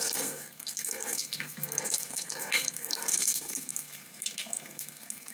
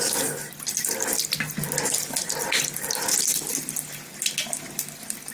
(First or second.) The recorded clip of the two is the second